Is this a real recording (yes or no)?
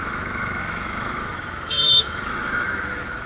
no